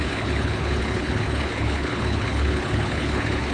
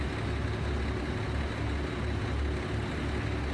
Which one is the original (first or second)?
second